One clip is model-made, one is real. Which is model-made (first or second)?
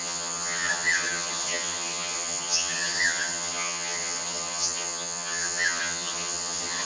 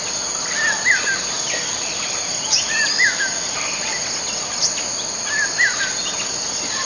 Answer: first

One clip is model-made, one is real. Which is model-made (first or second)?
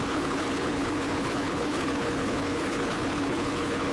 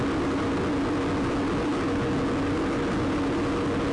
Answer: first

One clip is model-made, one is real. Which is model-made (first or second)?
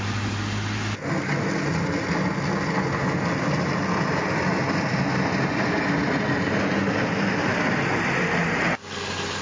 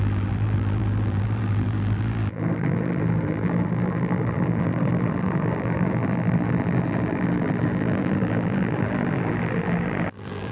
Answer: second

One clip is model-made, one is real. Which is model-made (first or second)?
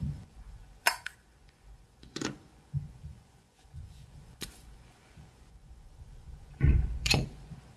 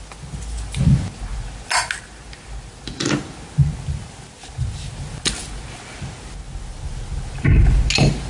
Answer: first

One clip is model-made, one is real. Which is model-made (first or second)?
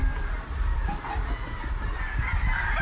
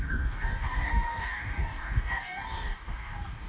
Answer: second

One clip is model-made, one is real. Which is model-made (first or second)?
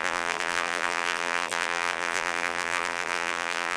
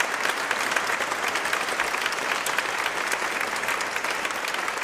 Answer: first